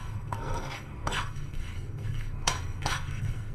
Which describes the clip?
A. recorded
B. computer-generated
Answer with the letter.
B